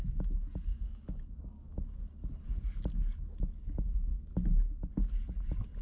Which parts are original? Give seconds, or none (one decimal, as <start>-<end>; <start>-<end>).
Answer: 0.0-0.7; 1.8-5.8